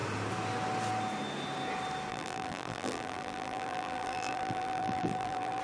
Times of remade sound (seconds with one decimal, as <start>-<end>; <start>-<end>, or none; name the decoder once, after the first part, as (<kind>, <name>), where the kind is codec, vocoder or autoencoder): 2.1-5.6 (vocoder, BigVGAN v2)